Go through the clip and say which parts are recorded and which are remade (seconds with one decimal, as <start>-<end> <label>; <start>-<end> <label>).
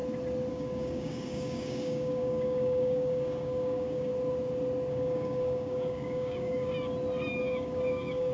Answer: 0.0-0.5 recorded; 0.5-4.1 remade; 4.1-4.9 recorded; 4.9-6.7 remade; 6.7-7.4 recorded; 7.4-8.3 remade